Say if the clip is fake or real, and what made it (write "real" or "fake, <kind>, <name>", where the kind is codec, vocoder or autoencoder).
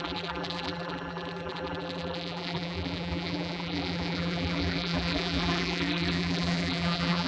fake, vocoder, BigVGAN v2